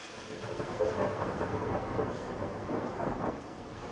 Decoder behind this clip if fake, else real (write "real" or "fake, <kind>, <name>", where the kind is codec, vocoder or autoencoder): fake, codec, SNAC